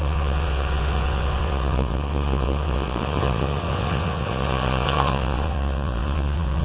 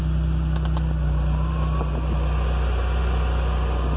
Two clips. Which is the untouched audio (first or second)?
second